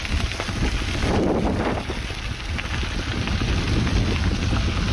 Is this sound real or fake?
real